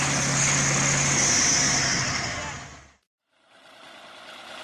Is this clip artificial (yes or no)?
no